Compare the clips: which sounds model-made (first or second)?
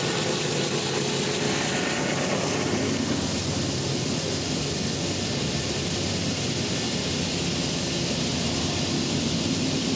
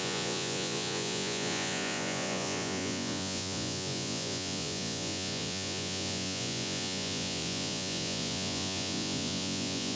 second